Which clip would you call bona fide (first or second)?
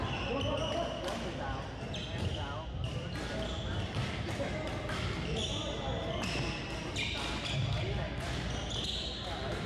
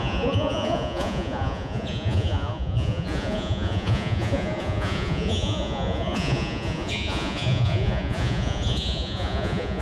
first